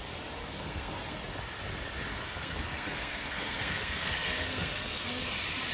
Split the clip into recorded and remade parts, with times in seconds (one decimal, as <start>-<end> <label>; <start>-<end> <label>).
0.0-0.4 recorded; 0.4-1.2 remade; 1.2-2.1 recorded; 2.1-5.3 remade; 5.3-5.7 recorded